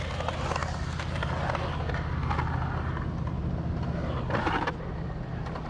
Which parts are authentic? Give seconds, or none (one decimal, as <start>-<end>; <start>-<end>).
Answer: 0.0-5.7

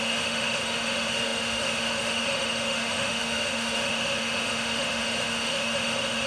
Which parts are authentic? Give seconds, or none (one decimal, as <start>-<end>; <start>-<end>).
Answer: none

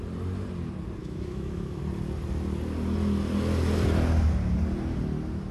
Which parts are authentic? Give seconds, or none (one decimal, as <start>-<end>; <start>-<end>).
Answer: 0.0-1.0; 1.8-5.5

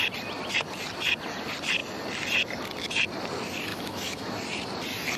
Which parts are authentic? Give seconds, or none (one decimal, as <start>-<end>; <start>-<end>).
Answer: 0.0-3.7; 4.3-5.2